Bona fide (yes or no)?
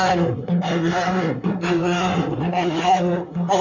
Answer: no